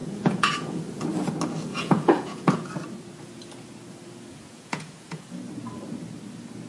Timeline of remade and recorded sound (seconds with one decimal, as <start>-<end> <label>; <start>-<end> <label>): 0.0-0.8 remade; 0.8-1.7 recorded; 1.7-2.7 remade; 2.7-4.3 recorded; 4.3-5.4 remade; 5.4-6.7 recorded